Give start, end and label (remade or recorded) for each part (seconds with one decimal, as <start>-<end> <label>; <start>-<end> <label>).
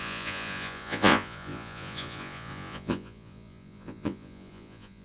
0.0-5.0 remade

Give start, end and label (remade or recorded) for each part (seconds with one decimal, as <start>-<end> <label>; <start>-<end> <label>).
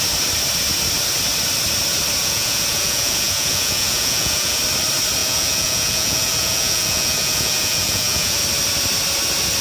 0.0-2.2 recorded; 2.2-4.6 remade; 4.6-5.2 recorded; 5.2-8.4 remade; 8.4-9.6 recorded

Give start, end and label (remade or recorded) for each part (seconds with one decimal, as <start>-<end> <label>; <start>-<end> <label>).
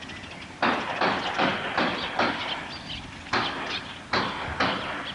0.0-5.1 recorded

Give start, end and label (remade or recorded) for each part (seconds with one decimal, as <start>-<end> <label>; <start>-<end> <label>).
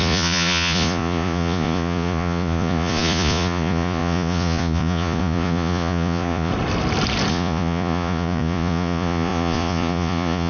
0.0-6.5 remade; 6.5-7.3 recorded; 7.3-10.5 remade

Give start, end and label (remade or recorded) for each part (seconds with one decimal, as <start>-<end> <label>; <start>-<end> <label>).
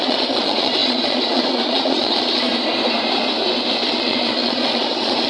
0.0-2.5 remade; 2.5-3.9 recorded; 3.9-5.3 remade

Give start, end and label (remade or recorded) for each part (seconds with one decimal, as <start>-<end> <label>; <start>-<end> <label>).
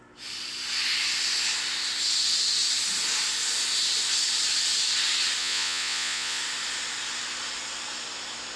0.0-5.4 recorded; 5.4-6.4 remade; 6.4-8.6 recorded